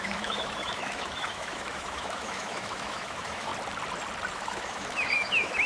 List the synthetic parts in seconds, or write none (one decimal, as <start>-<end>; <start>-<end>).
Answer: 0.0-3.5; 4.3-5.7